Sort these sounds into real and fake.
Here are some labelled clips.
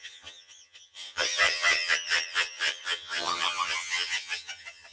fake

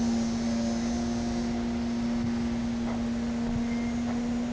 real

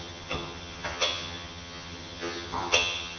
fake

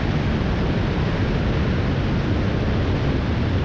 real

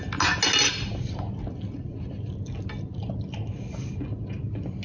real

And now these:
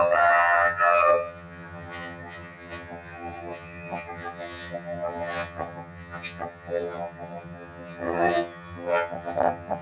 fake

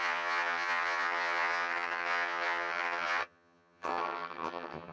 fake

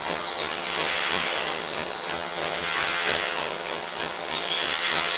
fake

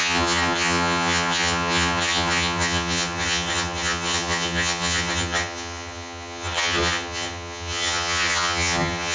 fake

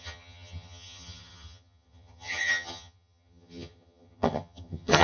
fake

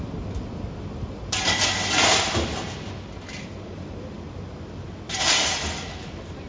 real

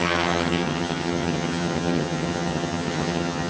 fake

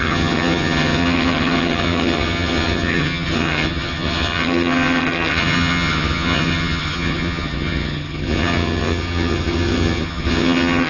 fake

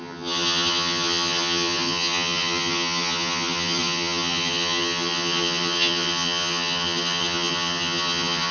fake